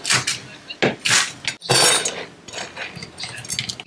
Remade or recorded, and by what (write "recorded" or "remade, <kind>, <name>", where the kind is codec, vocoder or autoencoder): recorded